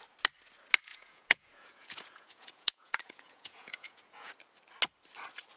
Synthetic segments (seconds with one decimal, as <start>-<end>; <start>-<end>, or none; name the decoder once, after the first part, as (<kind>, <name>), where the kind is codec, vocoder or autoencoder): 0.9-4.3 (vocoder, Vocos)